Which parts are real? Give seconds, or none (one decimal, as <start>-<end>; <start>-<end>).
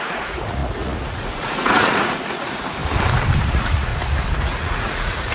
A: 2.8-3.4; 3.9-4.4